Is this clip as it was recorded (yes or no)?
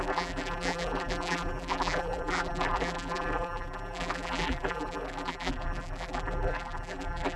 no